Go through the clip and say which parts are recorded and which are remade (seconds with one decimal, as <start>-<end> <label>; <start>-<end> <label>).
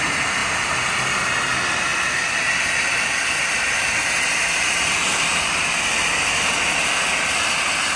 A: 0.0-8.0 recorded